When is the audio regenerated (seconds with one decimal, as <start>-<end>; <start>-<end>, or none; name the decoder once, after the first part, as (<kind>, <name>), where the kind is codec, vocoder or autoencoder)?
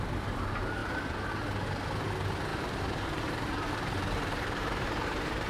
2.5-5.5 (vocoder, BigVGAN v2)